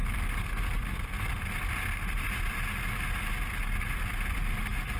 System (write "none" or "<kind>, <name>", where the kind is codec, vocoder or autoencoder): none